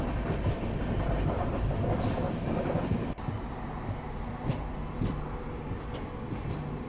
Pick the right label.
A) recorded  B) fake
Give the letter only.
A